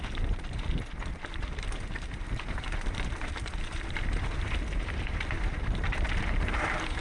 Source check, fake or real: fake